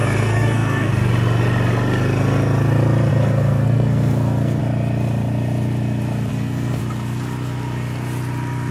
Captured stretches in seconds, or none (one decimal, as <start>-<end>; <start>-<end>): 0.9-3.1; 4.6-6.3; 6.8-8.7